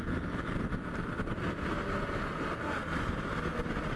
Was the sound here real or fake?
real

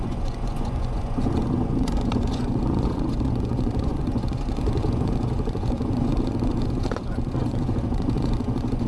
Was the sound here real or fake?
fake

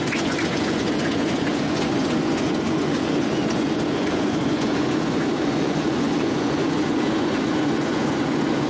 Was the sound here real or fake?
fake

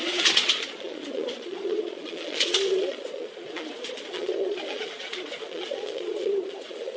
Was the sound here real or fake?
fake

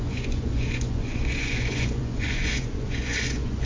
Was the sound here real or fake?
fake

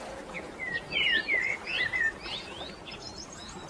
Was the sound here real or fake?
fake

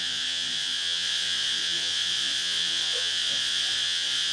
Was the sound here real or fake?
fake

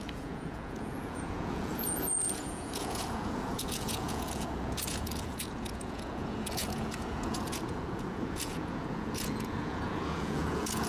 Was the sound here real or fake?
fake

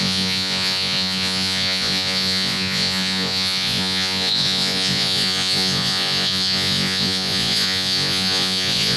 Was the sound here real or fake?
fake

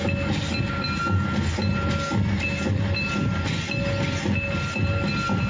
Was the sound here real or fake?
real